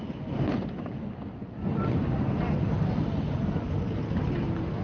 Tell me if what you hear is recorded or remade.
recorded